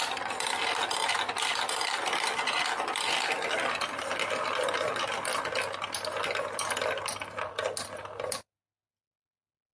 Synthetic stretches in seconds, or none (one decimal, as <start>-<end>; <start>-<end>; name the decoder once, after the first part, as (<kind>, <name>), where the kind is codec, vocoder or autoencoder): none